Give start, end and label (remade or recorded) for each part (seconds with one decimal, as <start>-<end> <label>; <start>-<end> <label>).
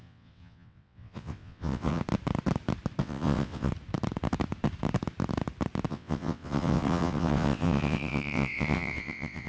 0.0-2.0 remade; 2.0-3.0 recorded; 3.0-3.7 remade; 3.7-5.9 recorded; 5.9-9.5 remade